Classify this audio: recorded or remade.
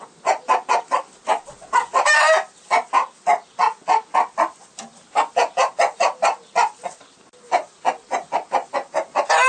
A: recorded